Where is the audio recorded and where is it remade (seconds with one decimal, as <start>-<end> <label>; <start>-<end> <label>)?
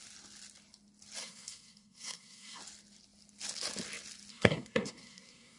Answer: 0.0-1.2 recorded; 1.2-2.6 remade; 2.6-4.3 recorded; 4.3-5.6 remade